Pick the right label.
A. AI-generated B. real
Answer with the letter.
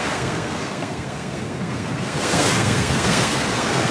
A